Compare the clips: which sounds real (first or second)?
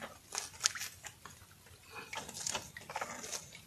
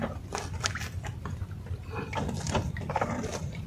first